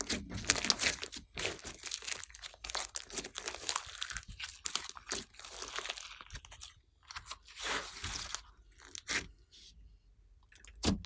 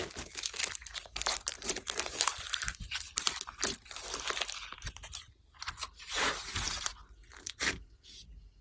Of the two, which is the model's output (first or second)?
second